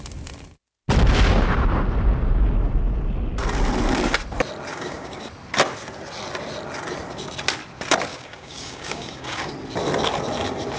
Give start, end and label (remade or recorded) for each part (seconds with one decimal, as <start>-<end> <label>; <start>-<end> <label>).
0.0-4.7 recorded; 4.7-5.2 remade; 5.2-8.1 recorded; 8.1-9.5 remade; 9.5-10.8 recorded